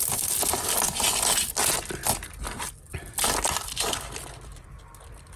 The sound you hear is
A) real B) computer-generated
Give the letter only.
A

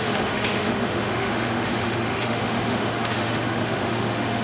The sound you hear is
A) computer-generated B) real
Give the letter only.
A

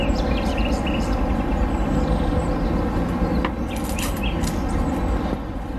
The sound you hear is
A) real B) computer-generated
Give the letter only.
A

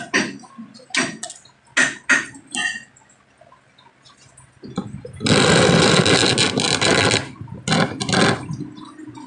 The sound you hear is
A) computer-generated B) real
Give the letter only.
B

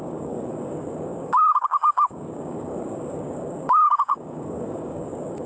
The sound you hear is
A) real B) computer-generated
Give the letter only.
B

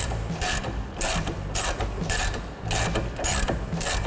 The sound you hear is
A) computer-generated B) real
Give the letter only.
B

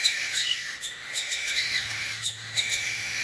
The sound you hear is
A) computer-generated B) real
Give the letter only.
A